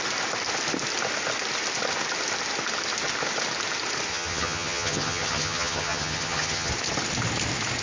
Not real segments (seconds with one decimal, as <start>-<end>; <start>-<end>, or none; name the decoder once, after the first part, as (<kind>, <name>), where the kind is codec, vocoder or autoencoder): 4.1-6.7 (vocoder, HiFi-GAN)